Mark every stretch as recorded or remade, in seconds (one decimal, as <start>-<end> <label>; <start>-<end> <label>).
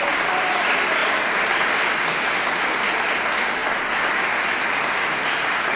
0.0-5.8 recorded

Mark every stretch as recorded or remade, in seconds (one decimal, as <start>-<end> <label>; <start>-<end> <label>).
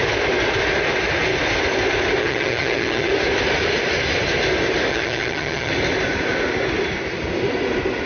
0.0-2.2 recorded; 2.2-3.1 remade; 3.1-4.9 recorded; 4.9-5.7 remade; 5.7-8.1 recorded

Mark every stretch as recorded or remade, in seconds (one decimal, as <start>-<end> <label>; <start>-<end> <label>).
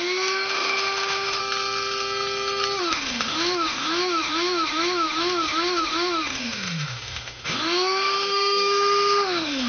0.0-1.4 remade; 1.4-2.8 recorded; 2.8-9.7 remade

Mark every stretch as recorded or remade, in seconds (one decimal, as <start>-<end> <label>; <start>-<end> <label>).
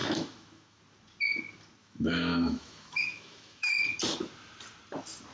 0.0-0.8 remade; 0.8-1.8 recorded; 1.8-3.7 remade; 3.7-5.3 recorded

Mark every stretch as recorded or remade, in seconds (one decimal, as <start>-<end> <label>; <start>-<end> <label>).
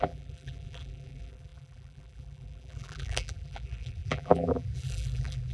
0.0-5.5 remade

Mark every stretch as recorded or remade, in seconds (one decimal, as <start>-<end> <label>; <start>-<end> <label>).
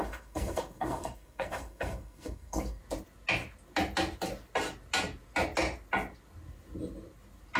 0.0-2.8 remade; 2.8-7.6 recorded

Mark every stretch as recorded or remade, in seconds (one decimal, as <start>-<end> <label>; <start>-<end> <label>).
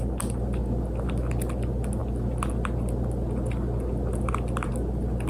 0.0-5.3 recorded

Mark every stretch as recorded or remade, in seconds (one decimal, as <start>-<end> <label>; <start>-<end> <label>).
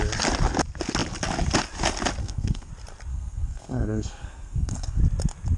0.0-2.2 recorded; 2.2-2.7 remade; 2.7-3.1 recorded; 3.1-5.0 remade; 5.0-5.6 recorded